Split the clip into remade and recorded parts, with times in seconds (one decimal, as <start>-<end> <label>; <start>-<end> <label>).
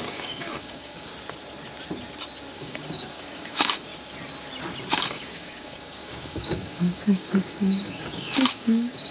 0.0-1.1 remade; 1.1-2.5 recorded; 2.5-3.9 remade; 3.9-4.9 recorded; 4.9-9.1 remade